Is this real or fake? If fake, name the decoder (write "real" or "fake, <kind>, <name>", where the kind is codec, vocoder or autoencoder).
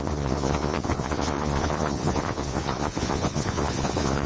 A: fake, vocoder, Vocos